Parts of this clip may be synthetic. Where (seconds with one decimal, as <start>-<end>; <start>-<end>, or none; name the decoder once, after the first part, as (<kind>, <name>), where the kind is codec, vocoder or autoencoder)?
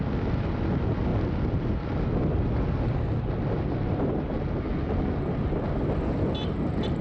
none